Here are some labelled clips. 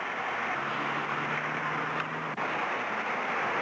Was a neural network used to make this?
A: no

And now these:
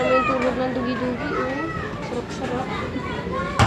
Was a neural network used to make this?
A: no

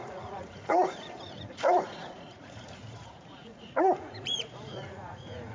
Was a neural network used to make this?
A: yes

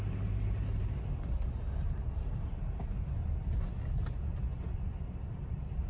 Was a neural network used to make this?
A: no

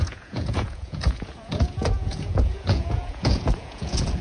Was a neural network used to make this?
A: yes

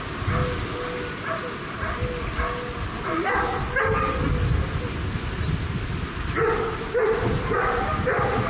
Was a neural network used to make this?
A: no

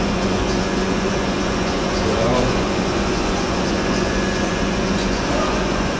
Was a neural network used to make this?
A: yes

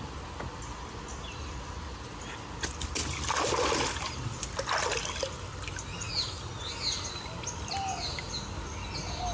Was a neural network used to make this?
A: no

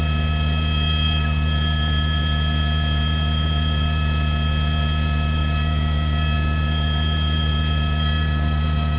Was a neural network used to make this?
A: no